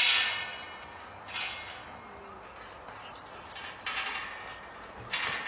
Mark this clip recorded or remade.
recorded